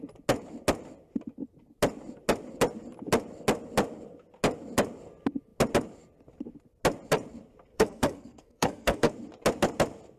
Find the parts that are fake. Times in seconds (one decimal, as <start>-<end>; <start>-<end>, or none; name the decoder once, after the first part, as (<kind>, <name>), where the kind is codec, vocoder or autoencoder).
7.7-9.1 (codec, SNAC)